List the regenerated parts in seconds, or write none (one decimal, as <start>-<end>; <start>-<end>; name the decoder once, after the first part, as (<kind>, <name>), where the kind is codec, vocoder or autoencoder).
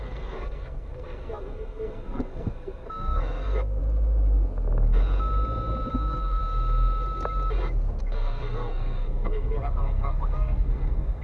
0.0-3.8 (codec, SNAC); 5.9-6.4; 8.0-11.2